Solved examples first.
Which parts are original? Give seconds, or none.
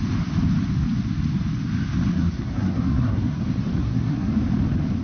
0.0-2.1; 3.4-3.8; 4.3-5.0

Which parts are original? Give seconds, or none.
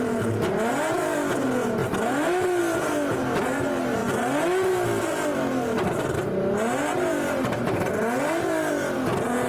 0.0-9.5